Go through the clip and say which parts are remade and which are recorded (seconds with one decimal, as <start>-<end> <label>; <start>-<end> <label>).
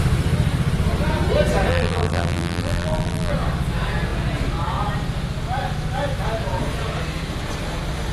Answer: 0.0-1.7 recorded; 1.7-3.3 remade; 3.3-8.1 recorded